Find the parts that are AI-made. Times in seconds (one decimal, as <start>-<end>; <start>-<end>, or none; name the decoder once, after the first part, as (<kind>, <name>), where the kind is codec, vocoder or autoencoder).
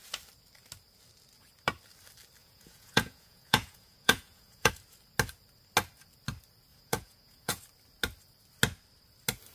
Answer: 2.4-4.7 (vocoder, Vocos); 6.7-7.6